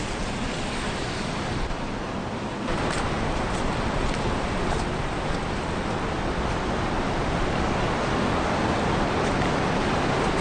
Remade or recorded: remade